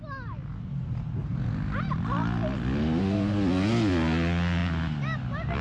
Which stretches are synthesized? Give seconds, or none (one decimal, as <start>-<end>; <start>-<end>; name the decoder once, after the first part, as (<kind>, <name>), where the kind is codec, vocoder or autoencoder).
none